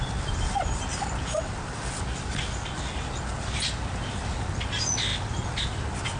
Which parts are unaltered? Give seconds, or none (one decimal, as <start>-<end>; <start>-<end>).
0.0-6.2